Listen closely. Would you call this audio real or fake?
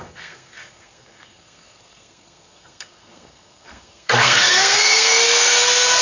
fake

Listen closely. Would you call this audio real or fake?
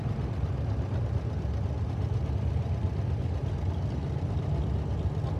real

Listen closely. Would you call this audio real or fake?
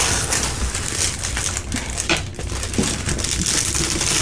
real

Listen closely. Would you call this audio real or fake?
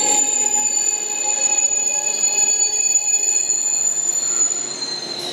real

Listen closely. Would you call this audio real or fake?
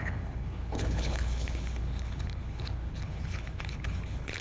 fake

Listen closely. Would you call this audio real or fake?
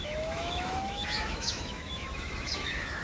fake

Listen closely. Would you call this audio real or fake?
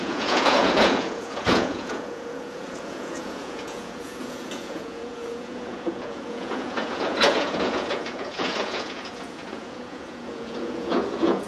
fake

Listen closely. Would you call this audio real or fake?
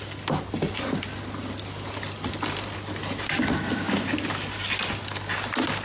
real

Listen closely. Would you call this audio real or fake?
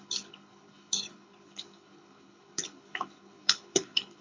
fake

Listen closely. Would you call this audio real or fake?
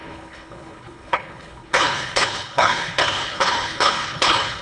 fake